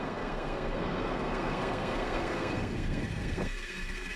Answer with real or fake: fake